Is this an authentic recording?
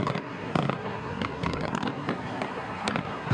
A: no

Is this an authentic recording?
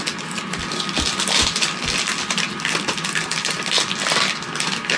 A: yes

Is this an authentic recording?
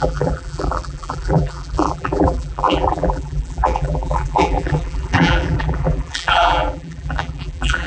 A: no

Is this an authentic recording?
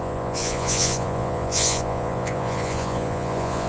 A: no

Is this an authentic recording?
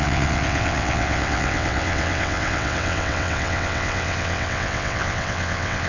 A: no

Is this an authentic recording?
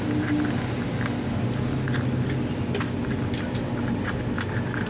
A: yes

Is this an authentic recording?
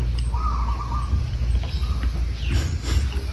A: yes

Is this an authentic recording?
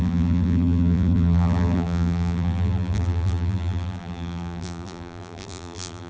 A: no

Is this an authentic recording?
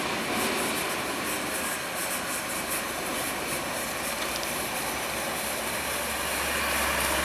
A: yes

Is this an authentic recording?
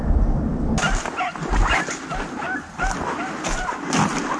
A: yes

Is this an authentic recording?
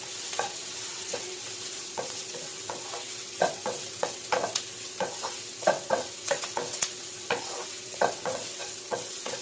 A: no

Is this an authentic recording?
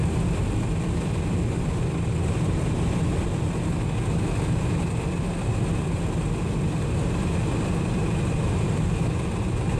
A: yes